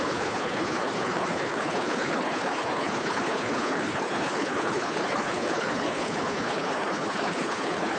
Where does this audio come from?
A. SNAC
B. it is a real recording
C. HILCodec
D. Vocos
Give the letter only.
C